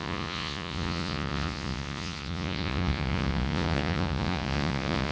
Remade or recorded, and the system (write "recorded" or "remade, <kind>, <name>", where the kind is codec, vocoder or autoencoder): remade, vocoder, Vocos